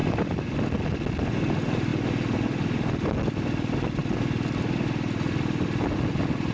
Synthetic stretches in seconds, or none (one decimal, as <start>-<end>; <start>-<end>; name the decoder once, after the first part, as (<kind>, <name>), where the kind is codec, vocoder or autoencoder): 0.0-0.6 (vocoder, BigVGAN v2)